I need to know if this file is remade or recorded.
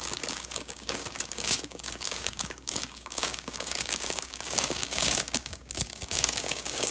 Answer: remade